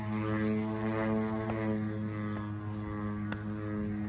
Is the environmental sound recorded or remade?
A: recorded